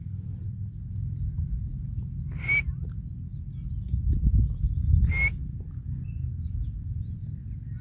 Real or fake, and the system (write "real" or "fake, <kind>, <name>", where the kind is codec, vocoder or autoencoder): real